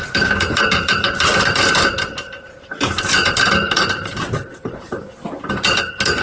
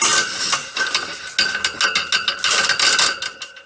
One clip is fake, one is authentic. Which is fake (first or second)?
first